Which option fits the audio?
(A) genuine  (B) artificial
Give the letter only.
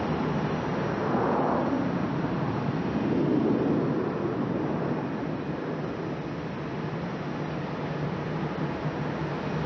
A